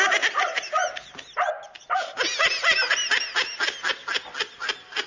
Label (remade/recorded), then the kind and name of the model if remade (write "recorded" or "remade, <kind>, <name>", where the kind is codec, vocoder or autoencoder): recorded